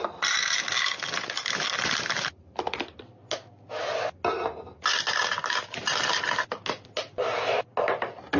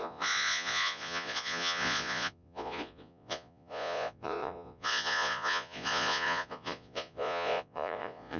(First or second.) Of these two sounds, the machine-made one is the second